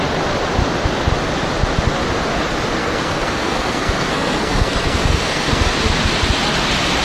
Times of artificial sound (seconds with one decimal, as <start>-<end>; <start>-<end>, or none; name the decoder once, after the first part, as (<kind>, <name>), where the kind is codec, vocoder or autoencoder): 2.8-5.6 (codec, SNAC)